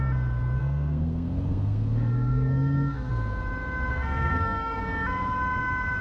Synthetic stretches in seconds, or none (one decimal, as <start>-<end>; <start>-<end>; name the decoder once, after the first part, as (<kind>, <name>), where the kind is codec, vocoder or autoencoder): 0.6-3.1 (codec, SNAC); 3.9-4.8